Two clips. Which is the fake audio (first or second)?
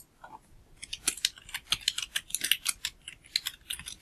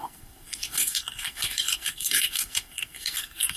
second